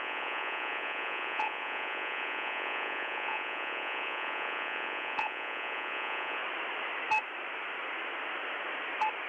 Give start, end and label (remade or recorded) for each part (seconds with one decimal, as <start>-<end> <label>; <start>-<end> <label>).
0.0-6.4 remade; 6.4-9.3 recorded